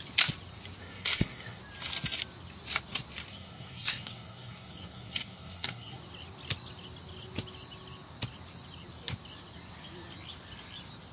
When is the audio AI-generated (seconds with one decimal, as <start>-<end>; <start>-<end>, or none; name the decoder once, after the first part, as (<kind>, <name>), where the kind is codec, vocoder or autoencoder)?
0.8-1.6 (codec, SNAC); 3.3-6.0